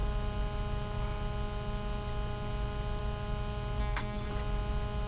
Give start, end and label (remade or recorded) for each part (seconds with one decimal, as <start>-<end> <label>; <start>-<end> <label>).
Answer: 0.0-3.8 recorded; 3.8-4.3 remade; 4.3-5.1 recorded